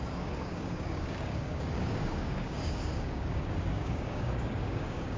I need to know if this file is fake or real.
fake